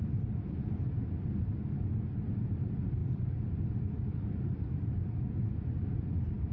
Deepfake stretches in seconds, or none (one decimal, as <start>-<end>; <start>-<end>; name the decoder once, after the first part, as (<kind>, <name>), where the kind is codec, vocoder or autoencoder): none

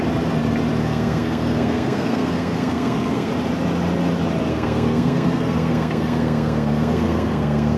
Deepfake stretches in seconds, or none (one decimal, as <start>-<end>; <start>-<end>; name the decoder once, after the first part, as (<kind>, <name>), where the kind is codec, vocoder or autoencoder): 0.8-3.3 (codec, SNAC); 4.5-7.8

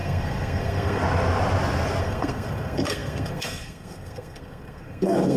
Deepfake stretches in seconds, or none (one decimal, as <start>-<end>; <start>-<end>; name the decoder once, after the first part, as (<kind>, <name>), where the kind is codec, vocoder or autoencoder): 0.0-1.0 (codec, SNAC); 2.0-5.4